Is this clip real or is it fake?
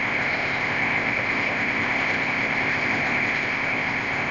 fake